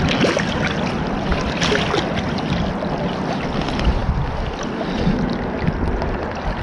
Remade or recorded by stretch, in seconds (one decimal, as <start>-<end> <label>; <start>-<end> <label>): 0.0-1.3 recorded; 1.3-2.9 remade; 2.9-4.0 recorded; 4.0-5.6 remade; 5.6-6.6 recorded